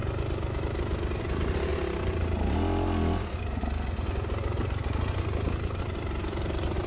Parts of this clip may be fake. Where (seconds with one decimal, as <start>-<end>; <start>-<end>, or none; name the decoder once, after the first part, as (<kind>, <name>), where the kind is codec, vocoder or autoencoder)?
1.2-1.7 (vocoder, BigVGAN v2); 5.8-6.9